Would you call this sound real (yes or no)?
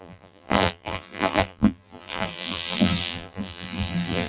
no